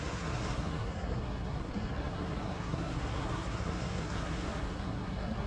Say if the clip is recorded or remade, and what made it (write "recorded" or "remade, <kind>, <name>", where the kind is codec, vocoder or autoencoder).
remade, codec, SNAC